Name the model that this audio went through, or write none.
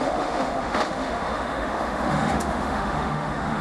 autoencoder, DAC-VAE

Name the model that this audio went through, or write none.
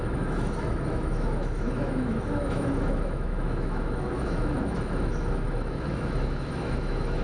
autoencoder, DAC-VAE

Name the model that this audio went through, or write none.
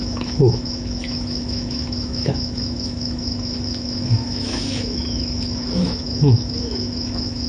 autoencoder, DAC-VAE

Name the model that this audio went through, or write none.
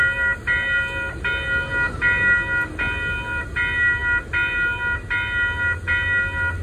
none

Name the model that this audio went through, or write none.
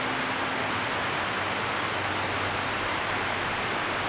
none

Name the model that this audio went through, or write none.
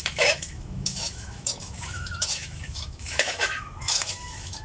autoencoder, DAC-VAE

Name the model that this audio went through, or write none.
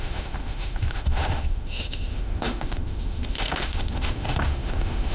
autoencoder, DAC-VAE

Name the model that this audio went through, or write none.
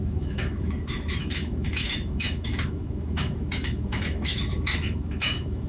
autoencoder, DAC-VAE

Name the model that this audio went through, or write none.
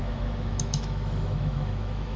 autoencoder, DAC-VAE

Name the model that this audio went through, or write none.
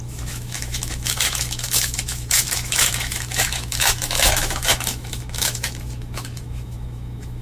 autoencoder, DAC-VAE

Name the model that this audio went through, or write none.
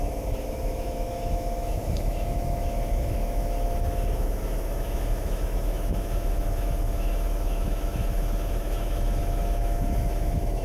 autoencoder, DAC-VAE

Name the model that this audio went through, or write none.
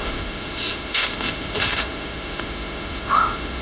autoencoder, DAC-VAE